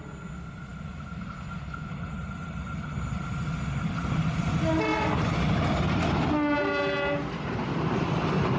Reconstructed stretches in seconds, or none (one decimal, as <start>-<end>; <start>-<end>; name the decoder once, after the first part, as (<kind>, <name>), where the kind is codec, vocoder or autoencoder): none